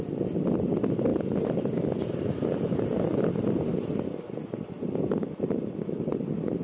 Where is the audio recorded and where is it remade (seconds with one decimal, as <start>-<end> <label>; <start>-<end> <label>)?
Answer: 0.0-6.6 recorded